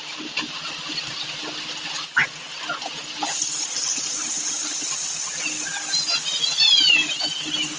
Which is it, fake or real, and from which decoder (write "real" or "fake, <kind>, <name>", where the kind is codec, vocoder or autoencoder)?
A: real